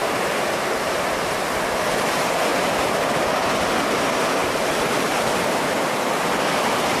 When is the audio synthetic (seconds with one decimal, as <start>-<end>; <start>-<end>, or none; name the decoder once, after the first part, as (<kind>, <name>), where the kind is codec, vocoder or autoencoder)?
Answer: 0.0-1.3 (vocoder, BigVGAN v2); 2.5-3.0